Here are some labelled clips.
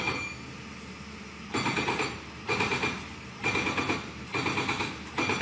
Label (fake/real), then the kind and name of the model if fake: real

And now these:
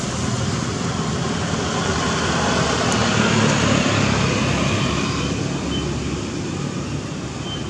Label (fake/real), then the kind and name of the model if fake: real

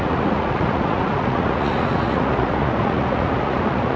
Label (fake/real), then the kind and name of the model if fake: fake, vocoder, Vocos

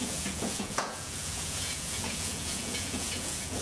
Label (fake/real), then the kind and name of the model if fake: fake, vocoder, Vocos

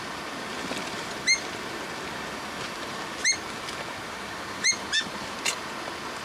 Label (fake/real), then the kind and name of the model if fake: real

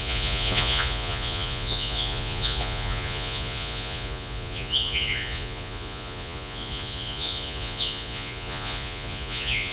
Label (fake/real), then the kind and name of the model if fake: fake, vocoder, Vocos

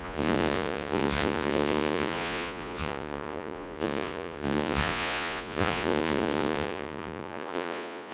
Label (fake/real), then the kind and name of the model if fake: fake, vocoder, Vocos